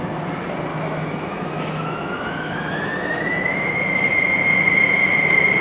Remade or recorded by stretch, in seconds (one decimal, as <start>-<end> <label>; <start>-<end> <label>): 0.0-0.7 recorded; 0.7-3.8 remade; 3.8-5.6 recorded